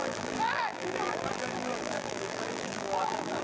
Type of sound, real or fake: fake